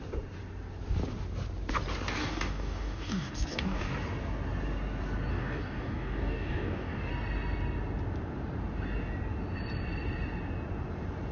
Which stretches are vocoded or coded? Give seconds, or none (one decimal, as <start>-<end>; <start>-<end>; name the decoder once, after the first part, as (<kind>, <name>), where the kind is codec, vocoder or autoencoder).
2.2-3.9 (codec, DAC); 5.3-7.1